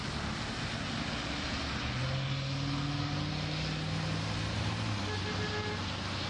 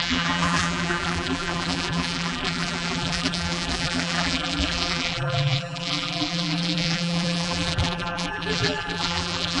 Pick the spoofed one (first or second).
second